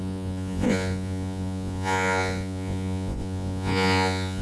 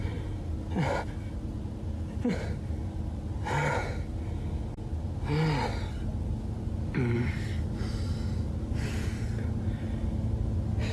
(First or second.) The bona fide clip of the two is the second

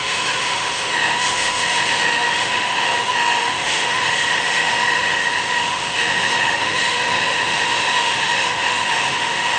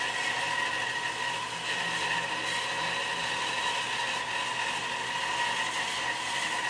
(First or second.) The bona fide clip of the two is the second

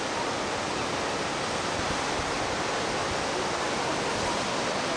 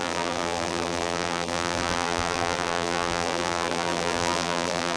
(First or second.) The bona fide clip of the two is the first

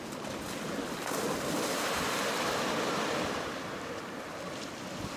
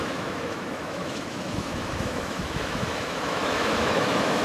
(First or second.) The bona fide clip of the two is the first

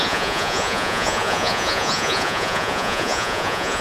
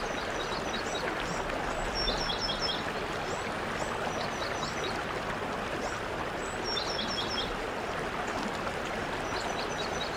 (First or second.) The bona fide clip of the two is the second